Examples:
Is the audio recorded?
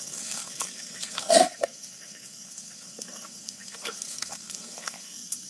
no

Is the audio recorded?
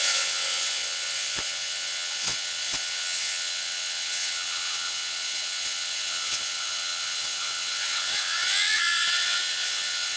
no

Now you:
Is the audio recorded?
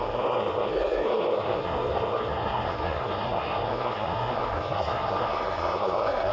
no